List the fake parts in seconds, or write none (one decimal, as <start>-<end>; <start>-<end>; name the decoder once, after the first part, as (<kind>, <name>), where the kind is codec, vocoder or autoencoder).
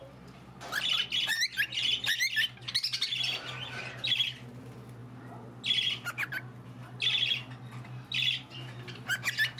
none